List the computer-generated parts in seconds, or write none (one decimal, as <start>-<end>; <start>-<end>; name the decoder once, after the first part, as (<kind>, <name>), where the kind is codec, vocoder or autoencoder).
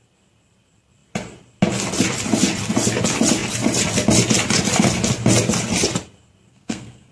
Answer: 6.5-7.1 (codec, SNAC)